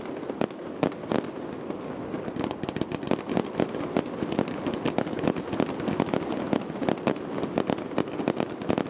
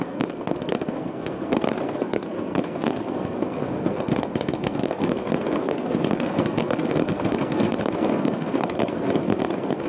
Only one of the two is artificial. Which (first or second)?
second